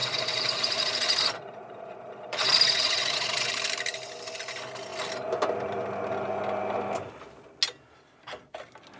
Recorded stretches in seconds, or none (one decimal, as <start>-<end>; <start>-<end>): 3.5-9.0